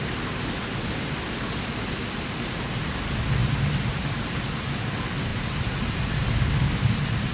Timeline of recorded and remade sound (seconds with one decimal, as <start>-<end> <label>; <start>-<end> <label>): 0.0-3.4 recorded; 3.4-4.4 remade; 4.4-5.3 recorded; 5.3-6.4 remade; 6.4-7.3 recorded